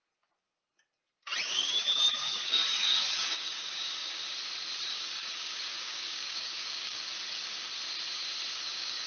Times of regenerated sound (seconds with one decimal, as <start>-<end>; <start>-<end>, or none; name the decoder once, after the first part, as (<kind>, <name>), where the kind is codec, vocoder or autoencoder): 1.4-4.2 (codec, DAC); 4.9-7.7; 8.6-9.1